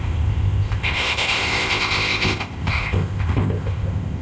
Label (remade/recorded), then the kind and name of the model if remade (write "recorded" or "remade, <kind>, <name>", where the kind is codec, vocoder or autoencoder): remade, codec, ZipCodec